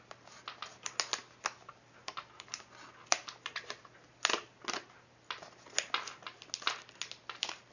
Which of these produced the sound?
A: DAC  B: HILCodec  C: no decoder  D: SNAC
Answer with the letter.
C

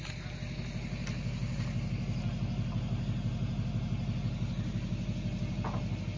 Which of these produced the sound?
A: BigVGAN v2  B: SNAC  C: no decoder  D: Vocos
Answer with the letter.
C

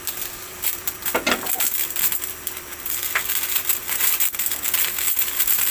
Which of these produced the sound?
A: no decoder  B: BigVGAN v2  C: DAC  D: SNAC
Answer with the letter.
A